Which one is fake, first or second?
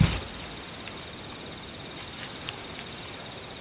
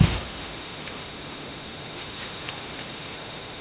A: second